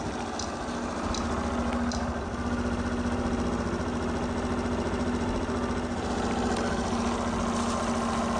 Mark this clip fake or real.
real